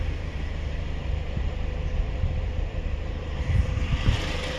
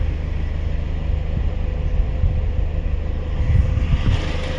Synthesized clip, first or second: first